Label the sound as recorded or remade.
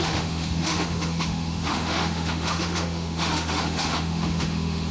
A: remade